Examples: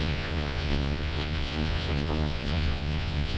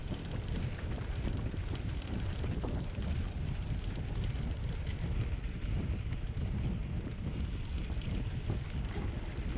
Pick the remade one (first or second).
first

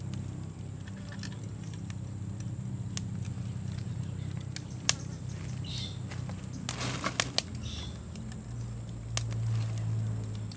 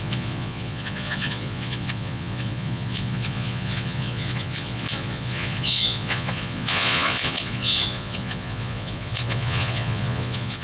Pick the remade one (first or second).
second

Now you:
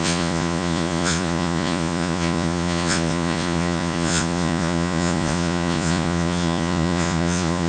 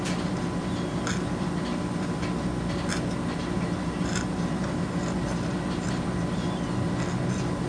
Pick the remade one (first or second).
first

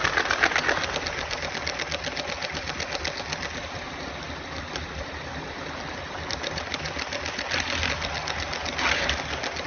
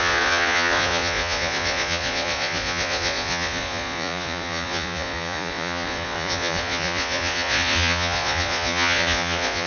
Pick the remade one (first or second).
second